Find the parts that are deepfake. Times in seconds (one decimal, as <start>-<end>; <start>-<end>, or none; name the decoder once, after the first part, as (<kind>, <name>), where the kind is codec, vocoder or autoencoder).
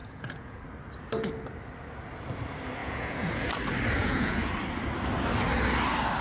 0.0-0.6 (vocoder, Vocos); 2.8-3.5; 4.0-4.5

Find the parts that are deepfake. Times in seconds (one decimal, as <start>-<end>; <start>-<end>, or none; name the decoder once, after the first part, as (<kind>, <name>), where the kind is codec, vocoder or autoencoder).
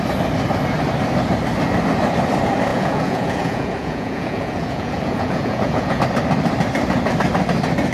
2.7-6.0 (vocoder, Vocos)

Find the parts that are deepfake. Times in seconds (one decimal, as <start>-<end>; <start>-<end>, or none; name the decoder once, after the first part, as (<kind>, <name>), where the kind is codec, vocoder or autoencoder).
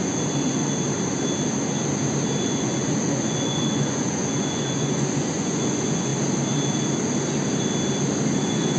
0.0-0.6 (vocoder, Vocos); 2.4-6.1; 8.4-8.8